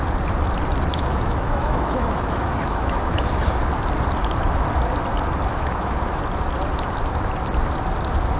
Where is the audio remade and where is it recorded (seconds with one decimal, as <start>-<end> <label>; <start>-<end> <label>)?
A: 0.0-0.9 recorded; 0.9-3.3 remade; 3.3-5.5 recorded; 5.5-6.2 remade; 6.2-8.4 recorded